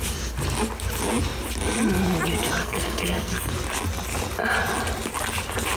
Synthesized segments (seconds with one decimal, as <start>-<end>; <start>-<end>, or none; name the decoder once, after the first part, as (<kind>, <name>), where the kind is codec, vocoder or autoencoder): 2.6-3.5 (codec, SNAC)